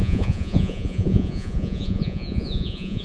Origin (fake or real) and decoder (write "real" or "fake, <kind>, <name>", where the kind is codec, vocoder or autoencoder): fake, vocoder, Vocos